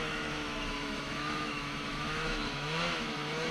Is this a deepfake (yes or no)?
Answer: yes